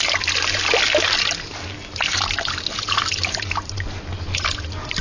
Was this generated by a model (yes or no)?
no